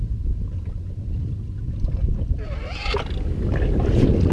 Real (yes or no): yes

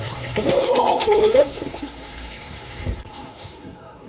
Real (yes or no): no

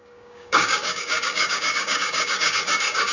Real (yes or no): no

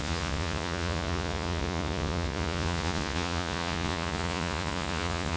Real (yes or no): no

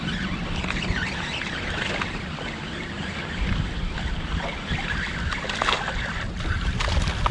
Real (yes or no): yes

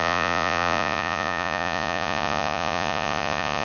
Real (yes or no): no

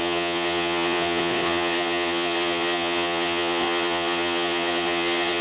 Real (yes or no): no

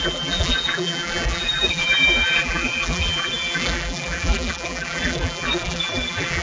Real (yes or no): no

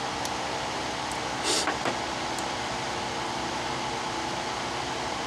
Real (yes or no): yes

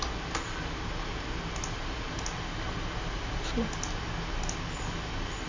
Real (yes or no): yes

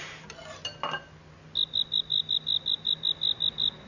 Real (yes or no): yes